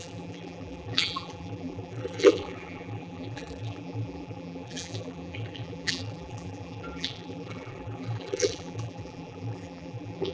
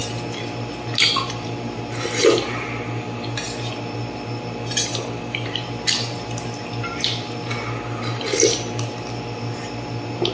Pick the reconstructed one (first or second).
first